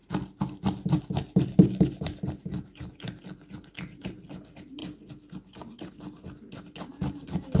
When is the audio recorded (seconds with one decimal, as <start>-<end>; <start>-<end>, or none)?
0.0-7.6